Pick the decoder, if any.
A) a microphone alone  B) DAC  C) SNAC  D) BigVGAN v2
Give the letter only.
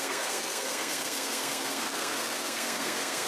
C